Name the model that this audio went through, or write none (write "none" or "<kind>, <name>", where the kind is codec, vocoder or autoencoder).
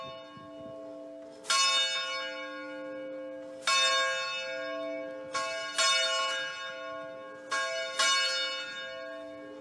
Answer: none